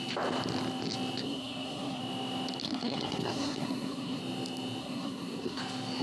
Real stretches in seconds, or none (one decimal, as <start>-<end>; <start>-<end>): 0.0-1.2; 2.0-2.6; 4.2-4.8; 5.6-6.0